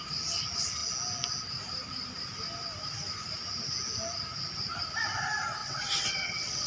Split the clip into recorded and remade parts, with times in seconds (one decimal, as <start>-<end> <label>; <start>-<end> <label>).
0.0-5.6 recorded; 5.6-6.7 remade

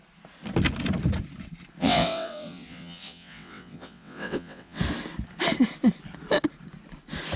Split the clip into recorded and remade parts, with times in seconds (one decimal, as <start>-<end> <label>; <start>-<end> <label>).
0.0-1.8 recorded; 1.8-4.8 remade; 4.8-7.4 recorded

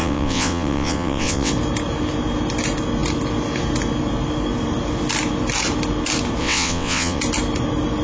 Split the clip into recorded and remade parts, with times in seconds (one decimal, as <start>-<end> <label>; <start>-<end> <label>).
0.0-1.5 remade; 1.5-6.4 recorded; 6.4-7.2 remade; 7.2-8.0 recorded

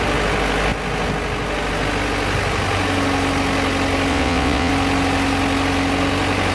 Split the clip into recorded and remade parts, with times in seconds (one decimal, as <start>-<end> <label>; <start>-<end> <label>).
0.0-4.1 recorded; 4.1-4.7 remade; 4.7-6.5 recorded

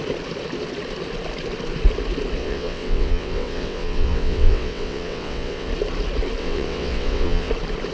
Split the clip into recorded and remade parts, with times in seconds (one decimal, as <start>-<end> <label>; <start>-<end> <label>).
0.0-2.4 recorded; 2.4-5.7 remade; 5.7-6.4 recorded; 6.4-7.5 remade; 7.5-7.9 recorded

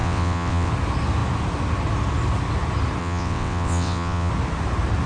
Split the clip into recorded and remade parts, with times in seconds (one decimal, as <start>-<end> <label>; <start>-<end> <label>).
0.0-0.7 remade; 0.7-3.0 recorded; 3.0-4.3 remade; 4.3-5.1 recorded

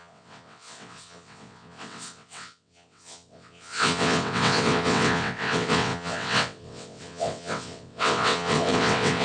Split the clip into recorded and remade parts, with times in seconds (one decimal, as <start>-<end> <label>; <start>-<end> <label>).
0.0-9.2 remade